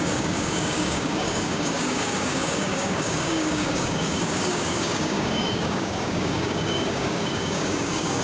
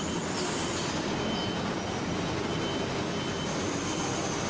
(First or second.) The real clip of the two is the second